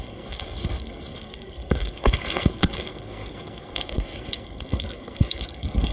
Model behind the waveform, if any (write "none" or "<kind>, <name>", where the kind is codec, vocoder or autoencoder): codec, SNAC